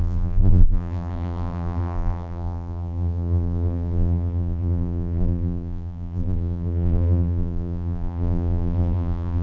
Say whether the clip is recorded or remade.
remade